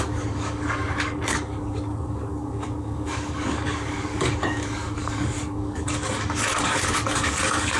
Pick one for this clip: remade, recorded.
remade